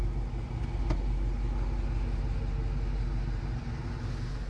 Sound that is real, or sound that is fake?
real